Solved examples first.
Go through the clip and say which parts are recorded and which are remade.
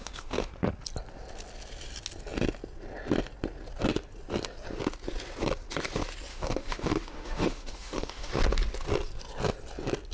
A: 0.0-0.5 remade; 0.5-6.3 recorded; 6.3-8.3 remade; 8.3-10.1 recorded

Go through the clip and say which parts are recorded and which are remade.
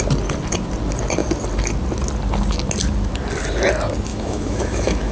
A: 0.0-4.1 recorded; 4.1-5.1 remade